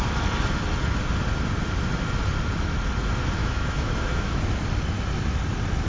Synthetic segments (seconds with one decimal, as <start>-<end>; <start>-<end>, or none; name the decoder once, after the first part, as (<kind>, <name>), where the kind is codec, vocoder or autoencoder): 3.4-4.4 (autoencoder, DAC-VAE)